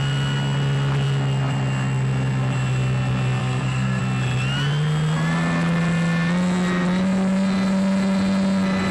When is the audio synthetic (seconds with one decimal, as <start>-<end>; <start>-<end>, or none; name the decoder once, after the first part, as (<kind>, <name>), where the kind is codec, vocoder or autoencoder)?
3.4-4.0 (codec, SNAC)